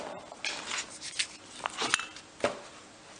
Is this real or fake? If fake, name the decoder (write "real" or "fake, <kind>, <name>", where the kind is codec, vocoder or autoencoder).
real